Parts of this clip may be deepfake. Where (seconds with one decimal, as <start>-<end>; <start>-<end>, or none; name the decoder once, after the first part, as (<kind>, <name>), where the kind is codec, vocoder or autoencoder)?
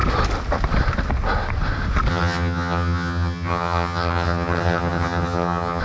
2.1-5.8 (vocoder, HiFi-GAN)